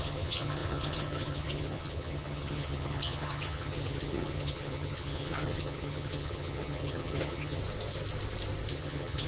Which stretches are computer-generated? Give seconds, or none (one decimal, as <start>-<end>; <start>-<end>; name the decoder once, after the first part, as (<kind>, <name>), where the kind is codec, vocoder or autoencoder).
0.0-7.6 (vocoder, HiFi-GAN); 8.7-9.3